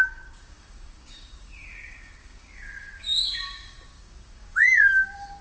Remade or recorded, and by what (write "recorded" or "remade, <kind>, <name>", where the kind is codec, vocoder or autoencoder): remade, codec, DAC